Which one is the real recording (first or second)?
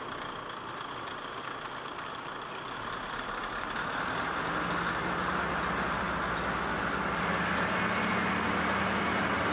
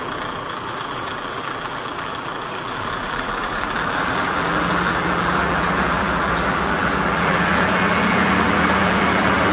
first